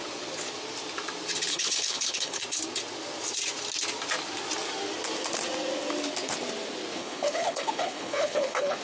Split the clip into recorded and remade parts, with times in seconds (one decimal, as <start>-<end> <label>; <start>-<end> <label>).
0.0-1.5 recorded; 1.5-2.4 remade; 2.4-6.9 recorded; 6.9-8.8 remade